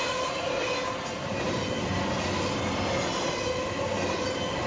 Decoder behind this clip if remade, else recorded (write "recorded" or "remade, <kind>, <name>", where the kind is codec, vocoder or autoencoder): recorded